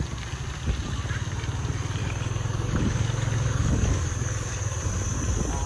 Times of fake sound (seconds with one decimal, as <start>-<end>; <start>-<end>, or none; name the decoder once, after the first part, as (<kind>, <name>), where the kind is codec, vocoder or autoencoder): 2.0-4.8 (codec, DAC)

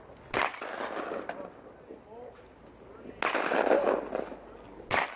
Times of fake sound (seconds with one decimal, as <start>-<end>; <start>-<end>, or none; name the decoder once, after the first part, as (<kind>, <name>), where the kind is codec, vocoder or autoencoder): none